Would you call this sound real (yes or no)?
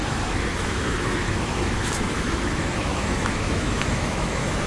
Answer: no